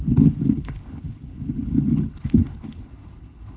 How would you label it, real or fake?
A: fake